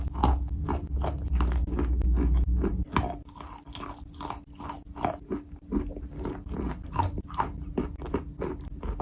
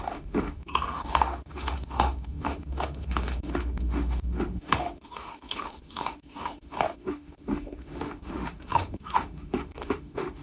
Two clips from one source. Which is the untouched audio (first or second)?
first